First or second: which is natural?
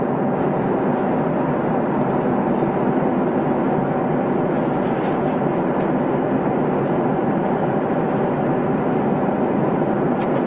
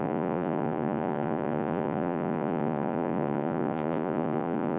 first